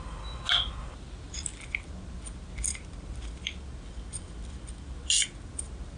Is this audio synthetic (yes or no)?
no